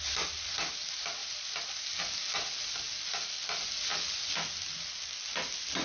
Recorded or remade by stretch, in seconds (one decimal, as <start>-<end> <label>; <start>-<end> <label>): 0.0-5.8 recorded